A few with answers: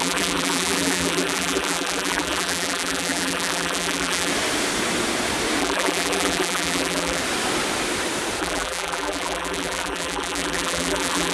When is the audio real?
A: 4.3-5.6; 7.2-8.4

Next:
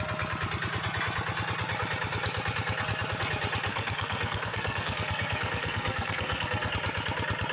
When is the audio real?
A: 0.0-3.7; 6.7-7.5

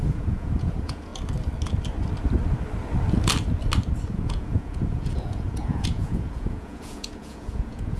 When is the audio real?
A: 1.1-4.1

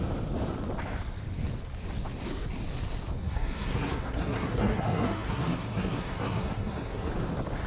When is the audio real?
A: 0.0-3.2; 7.1-7.7